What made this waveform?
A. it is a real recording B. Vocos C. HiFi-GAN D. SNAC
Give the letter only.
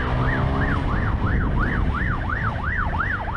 A